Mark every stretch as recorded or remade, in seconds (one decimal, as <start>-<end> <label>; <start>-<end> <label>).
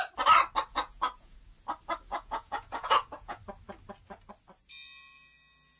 0.0-0.7 recorded; 0.7-1.4 remade; 1.4-2.1 recorded; 2.1-3.4 remade; 3.4-5.8 recorded